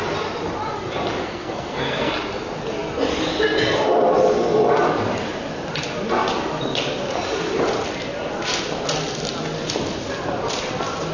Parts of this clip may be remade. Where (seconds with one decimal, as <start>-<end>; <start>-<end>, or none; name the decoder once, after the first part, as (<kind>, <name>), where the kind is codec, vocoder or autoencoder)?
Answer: 1.2-2.1 (codec, SNAC)